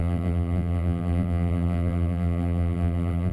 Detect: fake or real fake